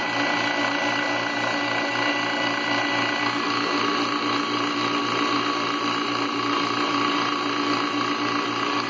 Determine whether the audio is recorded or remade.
recorded